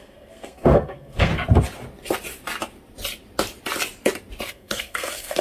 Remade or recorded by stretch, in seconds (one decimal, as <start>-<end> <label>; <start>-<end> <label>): 0.0-1.3 remade; 1.3-4.5 recorded; 4.5-5.4 remade